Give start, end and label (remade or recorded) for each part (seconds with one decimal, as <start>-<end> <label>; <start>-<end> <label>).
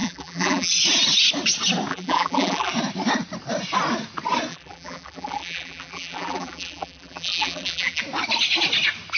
0.0-0.7 remade; 0.7-1.9 recorded; 1.9-2.7 remade; 2.7-4.5 recorded; 4.5-8.0 remade; 8.0-9.2 recorded